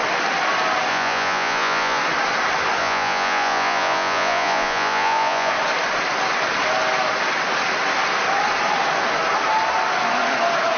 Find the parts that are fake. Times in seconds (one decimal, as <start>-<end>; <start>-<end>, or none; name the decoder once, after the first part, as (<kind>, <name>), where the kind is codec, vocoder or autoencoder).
0.9-2.0 (vocoder, Vocos); 2.8-5.5